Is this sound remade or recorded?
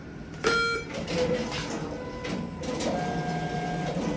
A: recorded